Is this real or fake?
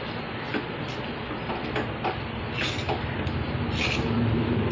real